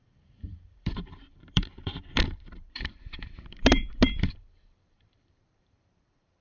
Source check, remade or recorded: remade